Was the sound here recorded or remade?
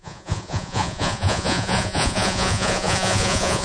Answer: remade